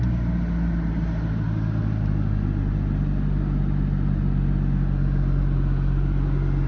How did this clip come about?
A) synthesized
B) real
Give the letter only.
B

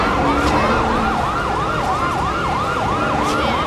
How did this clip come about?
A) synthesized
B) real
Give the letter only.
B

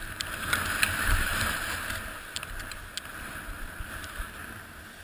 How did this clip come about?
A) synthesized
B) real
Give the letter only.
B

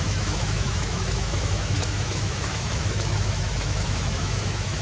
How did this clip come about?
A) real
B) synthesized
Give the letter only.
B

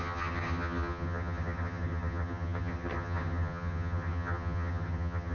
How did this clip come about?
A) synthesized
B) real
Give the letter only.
A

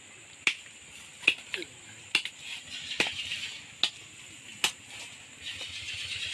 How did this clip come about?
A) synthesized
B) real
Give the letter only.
B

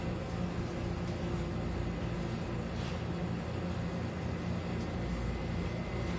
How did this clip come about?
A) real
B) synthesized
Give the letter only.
A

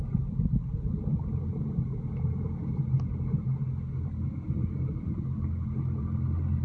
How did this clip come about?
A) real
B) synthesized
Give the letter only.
A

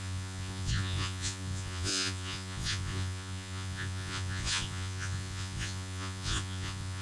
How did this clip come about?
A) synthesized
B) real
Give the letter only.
A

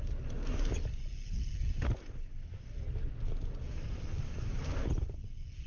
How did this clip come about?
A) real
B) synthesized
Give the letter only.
A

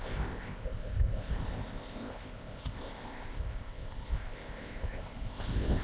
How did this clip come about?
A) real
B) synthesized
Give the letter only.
B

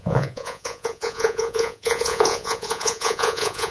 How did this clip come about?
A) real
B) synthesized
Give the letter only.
B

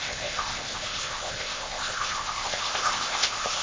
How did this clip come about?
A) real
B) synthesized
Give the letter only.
B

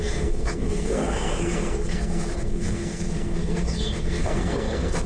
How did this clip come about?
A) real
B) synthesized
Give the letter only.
B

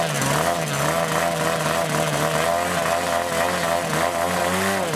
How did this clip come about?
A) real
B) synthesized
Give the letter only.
A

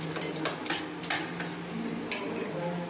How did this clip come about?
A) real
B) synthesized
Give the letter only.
A